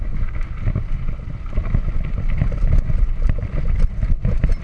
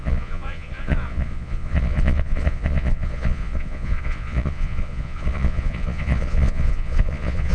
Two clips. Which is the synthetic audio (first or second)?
second